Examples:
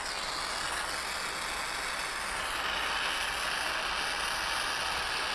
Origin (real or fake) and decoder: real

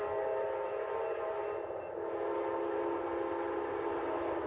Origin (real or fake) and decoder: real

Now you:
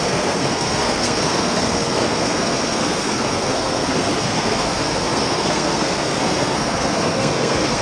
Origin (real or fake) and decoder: fake, codec, SNAC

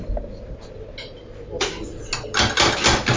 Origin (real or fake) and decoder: real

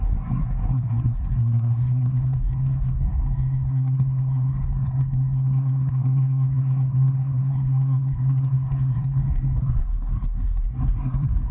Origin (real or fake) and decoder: fake, codec, SNAC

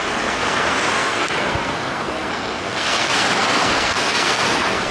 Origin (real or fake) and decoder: fake, codec, SNAC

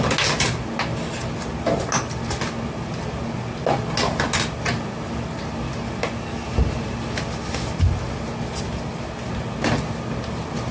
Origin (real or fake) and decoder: real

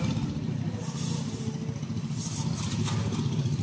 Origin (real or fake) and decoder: real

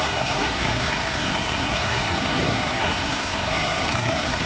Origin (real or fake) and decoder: fake, codec, SNAC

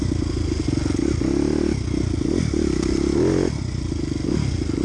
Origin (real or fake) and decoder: real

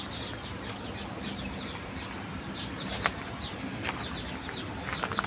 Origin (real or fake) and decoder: real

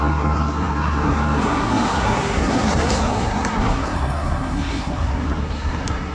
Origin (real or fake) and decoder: fake, codec, SNAC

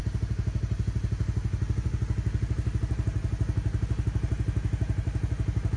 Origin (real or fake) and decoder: real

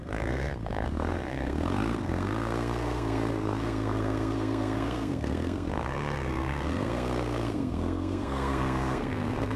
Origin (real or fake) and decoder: fake, codec, SNAC